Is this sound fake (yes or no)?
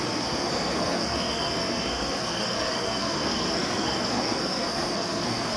yes